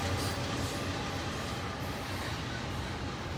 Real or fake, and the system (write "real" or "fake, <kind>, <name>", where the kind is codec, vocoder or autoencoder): real